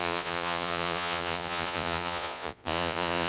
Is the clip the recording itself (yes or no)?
no